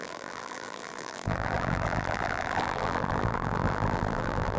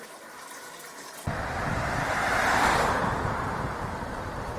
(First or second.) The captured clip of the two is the second